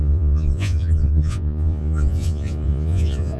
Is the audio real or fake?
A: fake